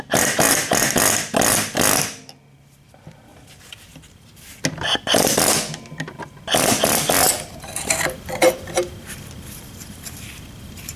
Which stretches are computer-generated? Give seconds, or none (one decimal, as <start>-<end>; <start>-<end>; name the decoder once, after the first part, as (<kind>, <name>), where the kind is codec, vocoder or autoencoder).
none